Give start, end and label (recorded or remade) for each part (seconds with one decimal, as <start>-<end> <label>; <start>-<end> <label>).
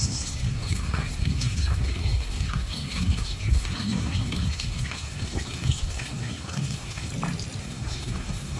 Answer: 0.0-7.1 remade; 7.1-7.6 recorded; 7.6-8.6 remade